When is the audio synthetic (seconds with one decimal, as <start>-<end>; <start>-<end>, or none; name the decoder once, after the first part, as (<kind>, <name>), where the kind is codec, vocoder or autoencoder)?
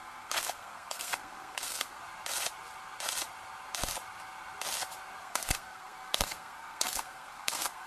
0.0-2.0 (codec, SNAC); 5.2-7.9